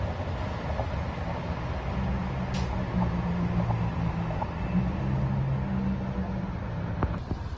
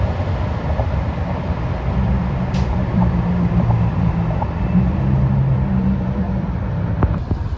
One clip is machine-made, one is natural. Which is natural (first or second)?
first